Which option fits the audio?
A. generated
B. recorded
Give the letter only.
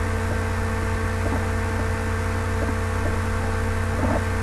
B